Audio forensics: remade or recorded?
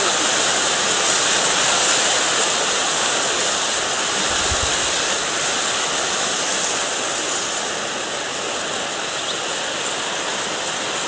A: recorded